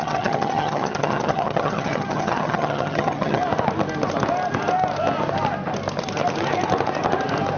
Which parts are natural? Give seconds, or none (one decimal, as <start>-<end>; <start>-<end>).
3.4-7.6